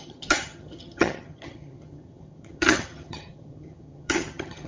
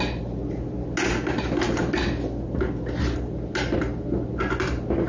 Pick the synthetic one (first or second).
first